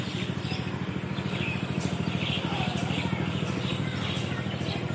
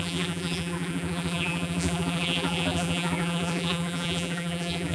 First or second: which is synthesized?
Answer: second